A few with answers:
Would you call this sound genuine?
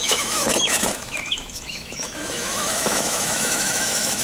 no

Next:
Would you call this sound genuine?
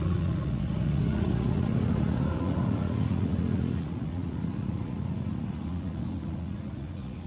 no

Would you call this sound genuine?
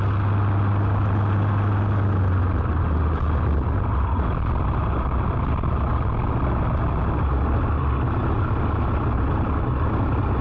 yes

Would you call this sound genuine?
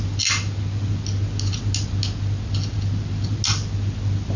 yes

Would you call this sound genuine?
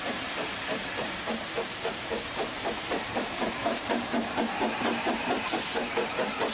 no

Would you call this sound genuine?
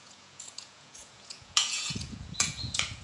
no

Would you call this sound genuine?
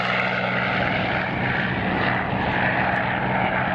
yes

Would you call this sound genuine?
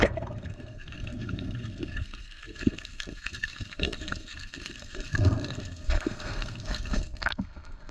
no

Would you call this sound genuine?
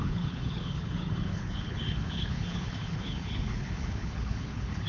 no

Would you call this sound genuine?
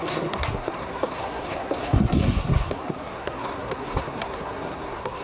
no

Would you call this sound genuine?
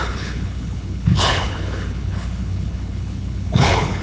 no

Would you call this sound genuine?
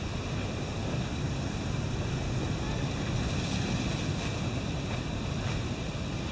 yes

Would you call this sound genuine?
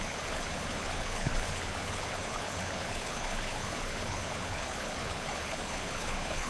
no